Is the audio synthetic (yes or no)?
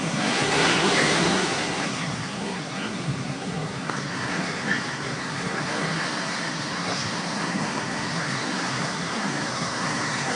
yes